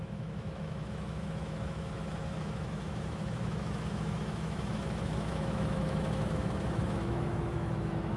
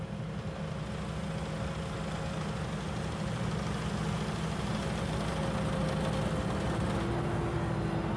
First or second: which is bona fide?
second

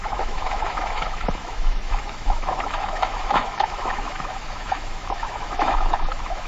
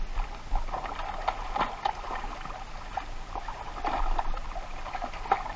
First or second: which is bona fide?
second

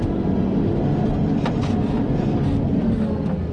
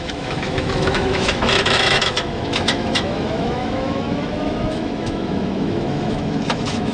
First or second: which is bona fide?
first